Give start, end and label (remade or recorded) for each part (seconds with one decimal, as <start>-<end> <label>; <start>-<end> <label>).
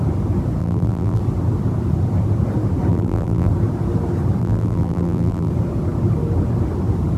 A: 0.0-0.6 recorded; 0.6-1.2 remade; 1.2-2.9 recorded; 2.9-3.5 remade; 3.5-4.4 recorded; 4.4-5.5 remade; 5.5-7.2 recorded